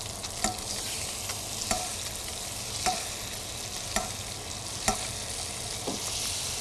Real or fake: real